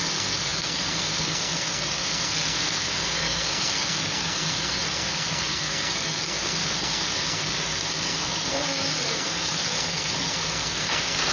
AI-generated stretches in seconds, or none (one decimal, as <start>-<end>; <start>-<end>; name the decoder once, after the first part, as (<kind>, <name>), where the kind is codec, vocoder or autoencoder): 0.0-11.3 (codec, SNAC)